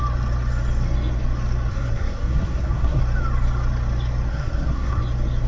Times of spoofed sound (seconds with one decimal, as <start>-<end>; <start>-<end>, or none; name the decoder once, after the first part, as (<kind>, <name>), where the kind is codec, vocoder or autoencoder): 1.7-3.0 (codec, SNAC); 4.3-5.0